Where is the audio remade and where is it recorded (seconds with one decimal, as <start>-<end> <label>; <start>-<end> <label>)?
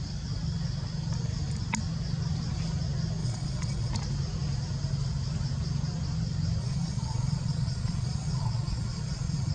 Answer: 0.0-3.2 recorded; 3.2-3.9 remade; 3.9-6.6 recorded; 6.6-9.5 remade